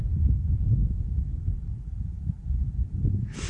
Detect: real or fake real